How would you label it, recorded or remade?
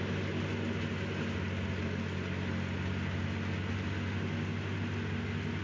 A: recorded